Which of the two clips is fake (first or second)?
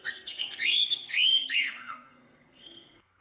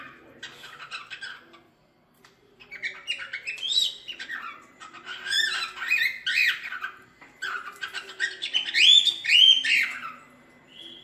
first